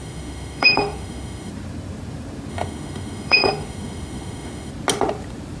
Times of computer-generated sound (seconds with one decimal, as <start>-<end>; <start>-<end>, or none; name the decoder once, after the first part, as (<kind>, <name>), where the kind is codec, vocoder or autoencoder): 0.0-1.5 (autoencoder, DAC-VAE); 2.5-4.7